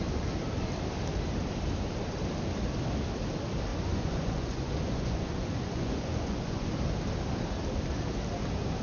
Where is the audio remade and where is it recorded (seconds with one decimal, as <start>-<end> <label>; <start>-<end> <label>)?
0.0-3.7 recorded; 3.7-6.7 remade; 6.7-8.8 recorded